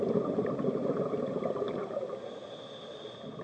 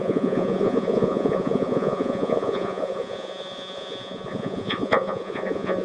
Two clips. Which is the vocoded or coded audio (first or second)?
second